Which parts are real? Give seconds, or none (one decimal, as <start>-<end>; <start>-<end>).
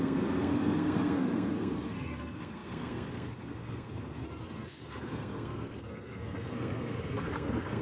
none